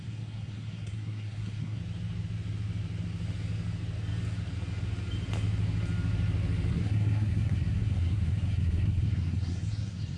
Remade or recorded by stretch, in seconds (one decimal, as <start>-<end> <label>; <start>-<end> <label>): 0.0-1.8 remade; 1.8-6.7 recorded; 6.7-10.2 remade